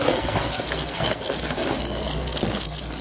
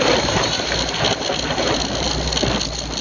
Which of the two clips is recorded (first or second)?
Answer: second